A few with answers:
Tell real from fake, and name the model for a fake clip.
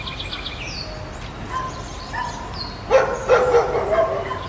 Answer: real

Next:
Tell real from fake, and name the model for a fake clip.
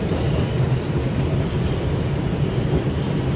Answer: real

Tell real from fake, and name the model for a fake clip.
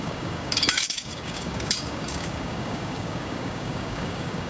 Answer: fake, codec, DAC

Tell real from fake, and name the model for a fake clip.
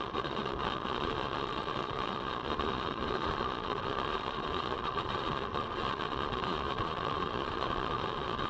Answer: fake, vocoder, Vocos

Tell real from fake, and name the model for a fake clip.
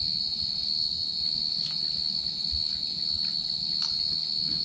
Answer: real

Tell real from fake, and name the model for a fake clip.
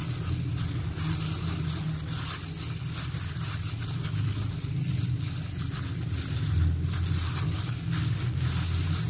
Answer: real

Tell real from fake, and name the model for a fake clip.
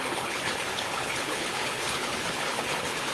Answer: fake, codec, HILCodec